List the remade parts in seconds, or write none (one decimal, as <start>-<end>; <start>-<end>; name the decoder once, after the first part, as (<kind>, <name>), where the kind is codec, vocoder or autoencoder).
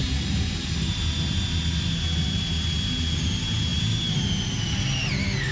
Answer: 0.0-0.7 (vocoder, BigVGAN v2)